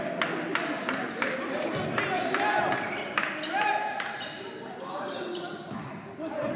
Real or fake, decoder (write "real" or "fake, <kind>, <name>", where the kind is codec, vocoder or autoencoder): real